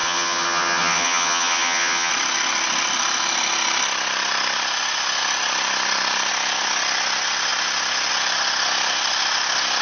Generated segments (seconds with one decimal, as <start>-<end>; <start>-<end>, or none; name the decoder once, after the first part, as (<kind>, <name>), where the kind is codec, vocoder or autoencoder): 0.0-2.1 (vocoder, HiFi-GAN)